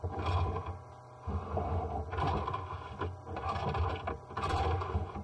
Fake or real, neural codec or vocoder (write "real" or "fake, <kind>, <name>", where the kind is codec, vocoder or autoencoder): real